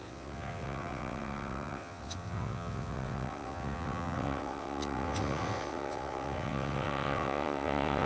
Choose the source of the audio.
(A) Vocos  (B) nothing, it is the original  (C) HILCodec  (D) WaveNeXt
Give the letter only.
D